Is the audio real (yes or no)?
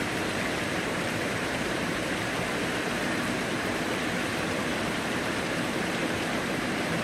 no